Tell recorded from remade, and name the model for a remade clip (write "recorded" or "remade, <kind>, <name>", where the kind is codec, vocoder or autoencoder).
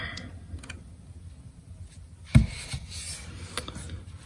recorded